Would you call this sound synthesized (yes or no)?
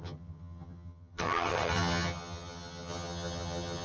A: yes